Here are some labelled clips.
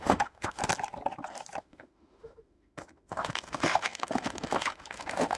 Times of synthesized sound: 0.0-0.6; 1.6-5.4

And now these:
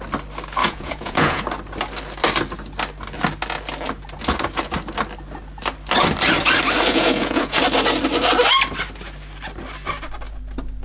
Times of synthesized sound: 0.6-1.4; 6.9-7.6

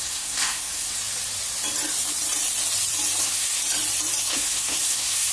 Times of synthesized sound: 0.0-0.9; 3.2-3.6; 4.2-5.3

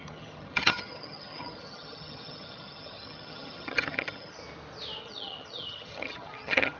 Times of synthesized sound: 0.0-4.4; 5.0-6.8

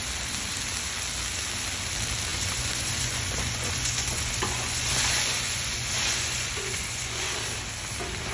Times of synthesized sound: 2.3-7.3

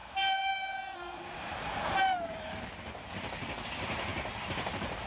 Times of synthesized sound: 0.0-3.1; 4.1-5.1

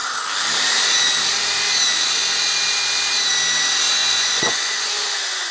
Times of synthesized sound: 4.0-5.5

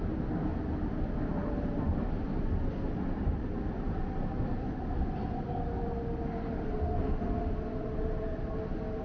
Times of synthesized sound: none